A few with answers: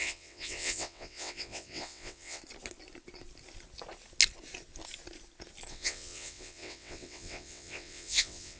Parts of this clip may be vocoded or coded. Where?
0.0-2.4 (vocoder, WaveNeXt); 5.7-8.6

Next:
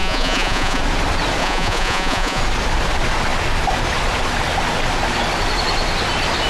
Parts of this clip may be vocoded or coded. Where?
0.0-0.8 (vocoder, Vocos); 1.4-2.4

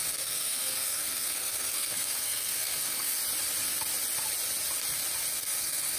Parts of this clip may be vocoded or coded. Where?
0.0-3.2 (codec, SNAC); 5.3-6.0

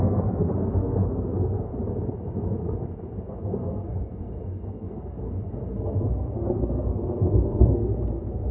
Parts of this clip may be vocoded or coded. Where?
0.0-1.7 (codec, SNAC); 3.4-8.5